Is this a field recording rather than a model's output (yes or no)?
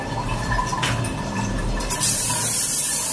no